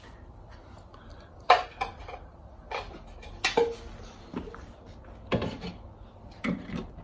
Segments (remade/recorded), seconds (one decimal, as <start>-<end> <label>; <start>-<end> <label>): 0.0-2.0 remade; 2.0-5.3 recorded; 5.3-7.0 remade